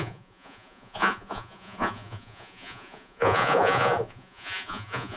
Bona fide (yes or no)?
no